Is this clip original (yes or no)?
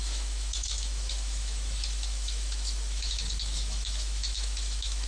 no